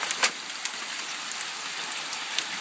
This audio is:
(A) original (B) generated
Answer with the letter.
A